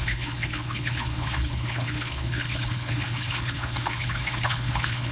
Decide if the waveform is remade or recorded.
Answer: remade